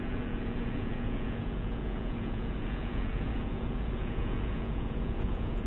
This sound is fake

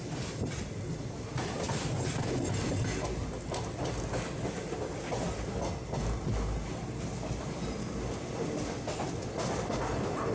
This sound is real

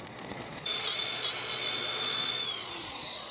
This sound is fake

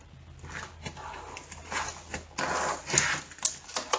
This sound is real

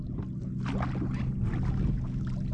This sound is real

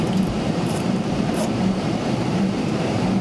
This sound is fake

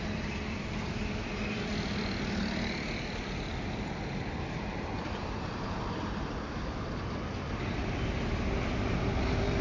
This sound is real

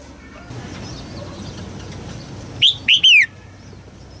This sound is real